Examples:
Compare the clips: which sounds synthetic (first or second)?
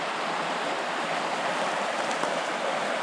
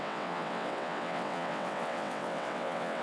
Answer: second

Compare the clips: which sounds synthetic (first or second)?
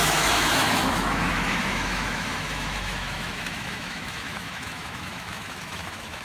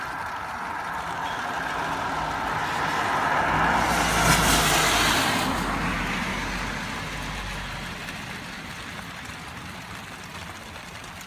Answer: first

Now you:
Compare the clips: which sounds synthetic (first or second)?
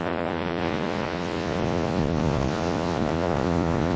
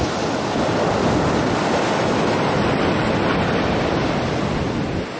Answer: first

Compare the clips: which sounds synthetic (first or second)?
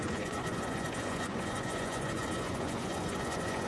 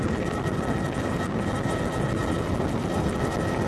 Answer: first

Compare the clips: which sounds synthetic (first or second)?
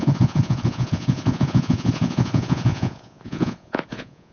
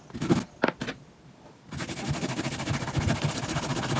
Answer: first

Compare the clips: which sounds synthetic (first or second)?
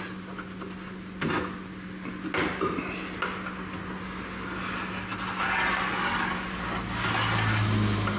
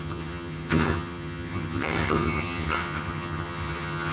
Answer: second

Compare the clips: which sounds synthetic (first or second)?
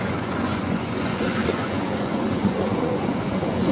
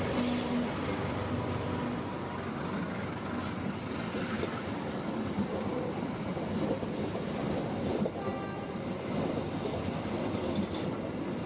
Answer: first